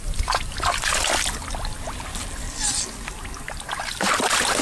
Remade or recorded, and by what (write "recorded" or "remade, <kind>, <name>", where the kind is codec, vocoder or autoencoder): recorded